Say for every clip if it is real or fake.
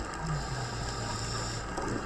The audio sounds real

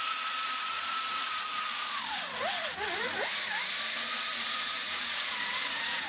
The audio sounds fake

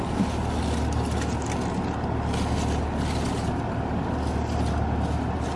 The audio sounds real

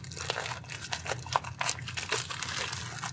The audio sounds real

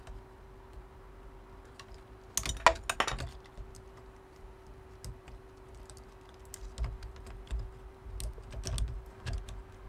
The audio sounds real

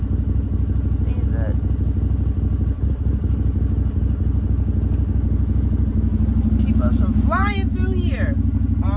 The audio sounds real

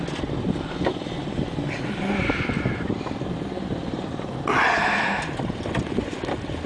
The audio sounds real